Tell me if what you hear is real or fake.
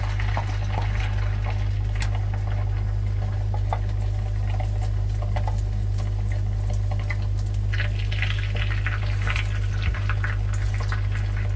real